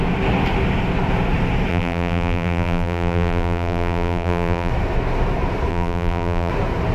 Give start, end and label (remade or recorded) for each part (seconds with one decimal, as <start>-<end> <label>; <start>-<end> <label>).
0.0-1.7 recorded; 1.7-4.7 remade; 4.7-5.7 recorded; 5.7-6.5 remade; 6.5-6.9 recorded